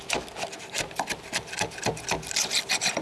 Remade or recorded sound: recorded